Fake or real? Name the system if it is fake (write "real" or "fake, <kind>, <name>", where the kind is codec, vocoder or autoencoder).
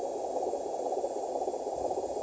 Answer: real